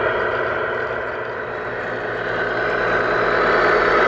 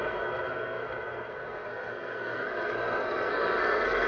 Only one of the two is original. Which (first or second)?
first